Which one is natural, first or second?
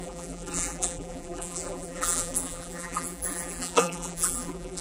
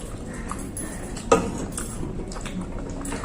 second